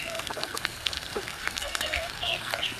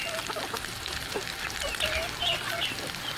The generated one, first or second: first